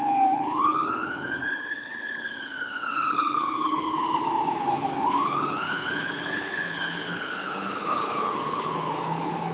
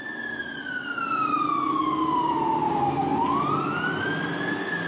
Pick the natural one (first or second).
second